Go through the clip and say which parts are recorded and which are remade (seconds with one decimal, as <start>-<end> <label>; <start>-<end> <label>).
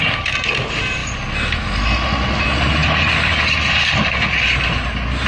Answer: 0.0-2.8 recorded; 2.8-3.4 remade; 3.4-5.3 recorded